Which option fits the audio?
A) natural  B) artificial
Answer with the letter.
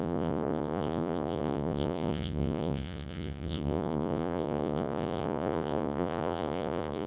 B